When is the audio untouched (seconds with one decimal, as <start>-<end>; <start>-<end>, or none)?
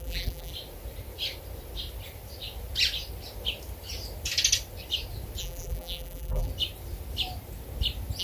0.5-5.4; 6.5-8.2